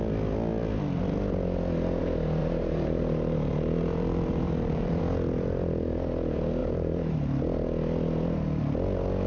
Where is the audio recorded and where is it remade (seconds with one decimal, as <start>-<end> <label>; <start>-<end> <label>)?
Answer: 0.0-2.4 recorded; 2.4-5.0 remade; 5.0-6.6 recorded; 6.6-7.3 remade; 7.3-9.3 recorded